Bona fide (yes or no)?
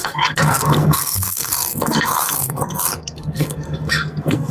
no